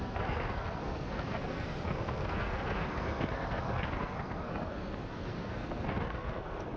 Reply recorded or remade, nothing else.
remade